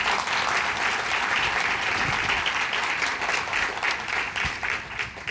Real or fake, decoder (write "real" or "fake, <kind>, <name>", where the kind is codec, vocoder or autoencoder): real